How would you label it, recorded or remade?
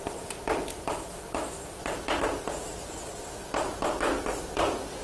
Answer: remade